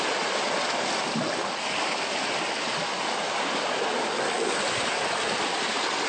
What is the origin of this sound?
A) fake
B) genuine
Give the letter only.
B